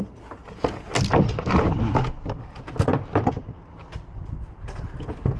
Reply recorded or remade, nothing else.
recorded